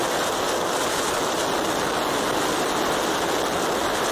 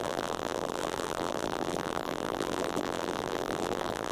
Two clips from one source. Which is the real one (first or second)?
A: first